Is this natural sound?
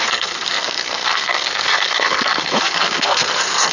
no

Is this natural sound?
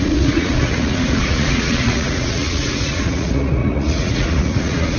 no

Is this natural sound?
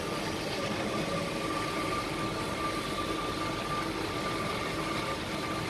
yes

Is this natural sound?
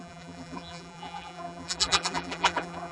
no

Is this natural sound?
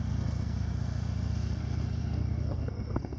no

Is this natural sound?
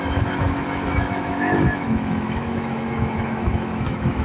no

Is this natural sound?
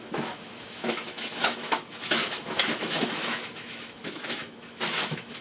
no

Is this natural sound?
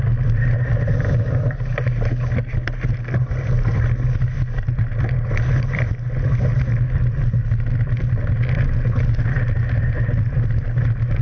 yes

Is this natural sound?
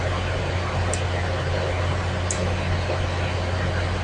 yes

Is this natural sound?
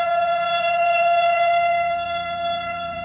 no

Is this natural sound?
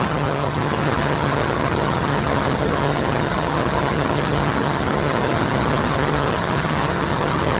no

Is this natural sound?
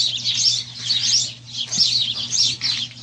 yes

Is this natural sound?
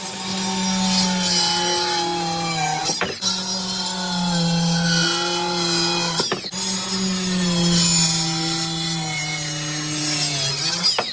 yes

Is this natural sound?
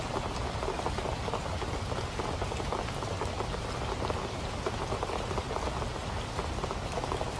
yes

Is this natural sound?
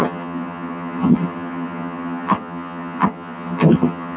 no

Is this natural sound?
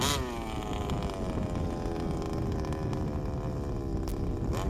yes